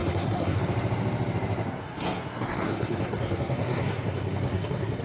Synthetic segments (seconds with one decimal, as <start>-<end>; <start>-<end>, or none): 0.0-0.6; 1.8-5.0